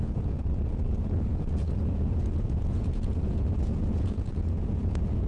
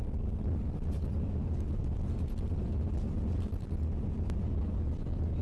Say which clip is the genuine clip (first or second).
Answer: second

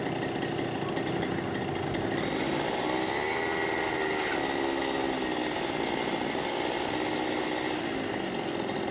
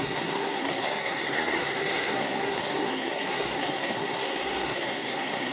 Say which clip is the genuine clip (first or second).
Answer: first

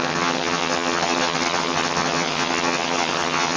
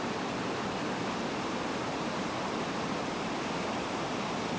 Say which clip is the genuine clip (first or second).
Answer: second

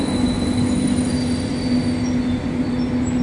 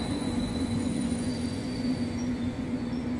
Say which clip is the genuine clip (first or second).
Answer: first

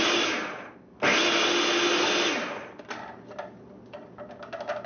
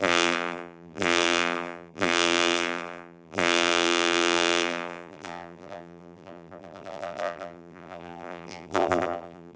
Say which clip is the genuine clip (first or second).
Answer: first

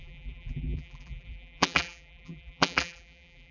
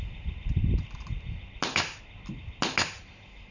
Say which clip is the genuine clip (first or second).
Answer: second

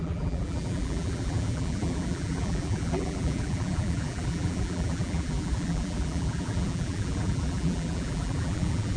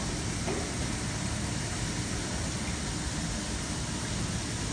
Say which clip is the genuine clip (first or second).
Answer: second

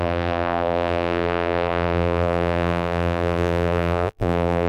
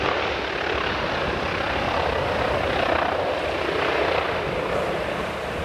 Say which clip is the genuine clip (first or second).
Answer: second